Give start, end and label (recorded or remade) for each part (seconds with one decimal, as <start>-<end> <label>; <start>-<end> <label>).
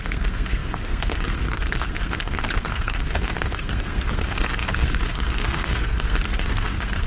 0.0-7.1 remade